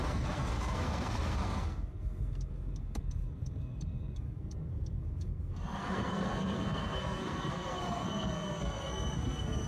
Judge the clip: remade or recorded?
remade